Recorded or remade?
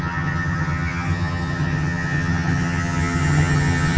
remade